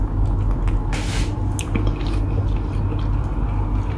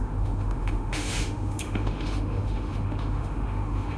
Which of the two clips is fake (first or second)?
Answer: second